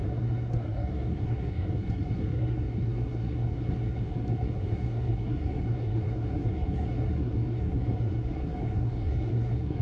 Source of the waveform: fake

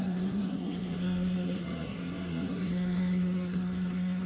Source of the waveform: fake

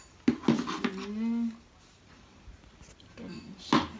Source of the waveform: real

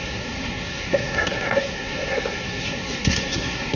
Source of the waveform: fake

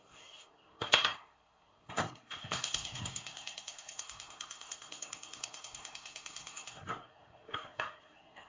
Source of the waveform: fake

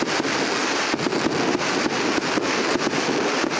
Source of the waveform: real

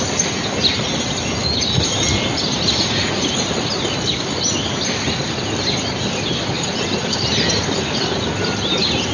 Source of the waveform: real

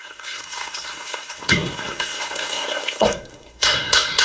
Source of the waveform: fake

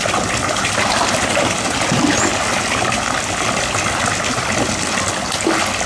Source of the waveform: real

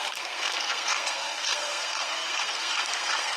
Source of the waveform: fake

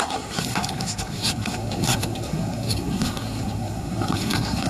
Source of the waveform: fake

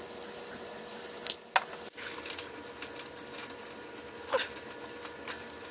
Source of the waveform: real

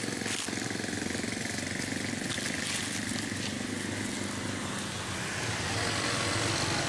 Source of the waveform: real